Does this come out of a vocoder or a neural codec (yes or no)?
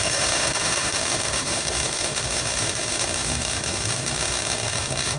yes